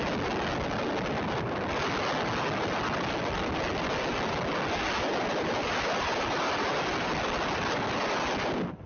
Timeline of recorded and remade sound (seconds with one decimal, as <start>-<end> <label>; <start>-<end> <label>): 0.0-8.9 recorded